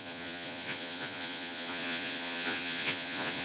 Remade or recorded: remade